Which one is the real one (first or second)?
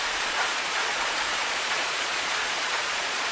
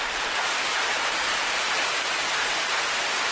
second